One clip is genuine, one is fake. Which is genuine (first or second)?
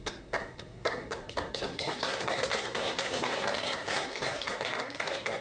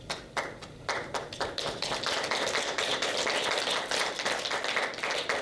second